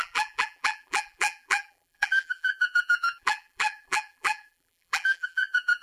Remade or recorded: remade